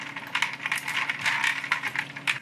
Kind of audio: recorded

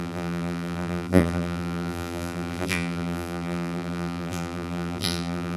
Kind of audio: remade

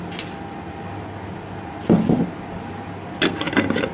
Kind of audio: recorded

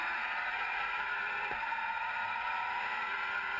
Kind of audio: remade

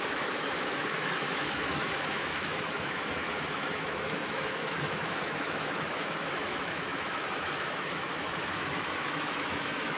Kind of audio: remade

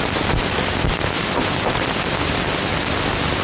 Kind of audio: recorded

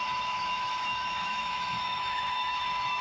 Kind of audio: remade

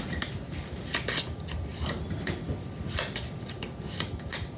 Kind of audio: recorded